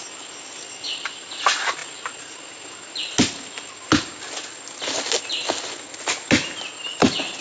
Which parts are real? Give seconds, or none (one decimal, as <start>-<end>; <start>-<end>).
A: 0.0-7.4